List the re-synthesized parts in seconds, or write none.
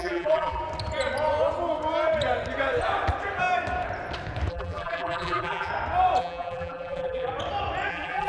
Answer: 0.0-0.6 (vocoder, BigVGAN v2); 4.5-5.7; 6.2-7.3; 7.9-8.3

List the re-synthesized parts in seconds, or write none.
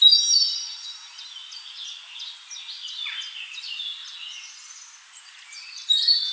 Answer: none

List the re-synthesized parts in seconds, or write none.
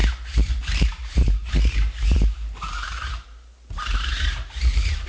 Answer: 0.0-3.1 (vocoder, BigVGAN v2)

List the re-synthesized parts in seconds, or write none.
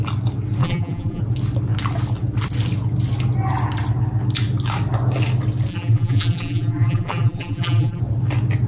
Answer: 0.6-1.2 (vocoder, BigVGAN v2); 5.7-8.0